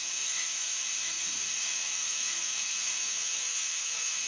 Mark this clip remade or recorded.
remade